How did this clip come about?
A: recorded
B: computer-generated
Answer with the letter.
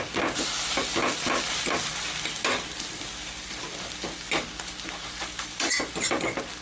A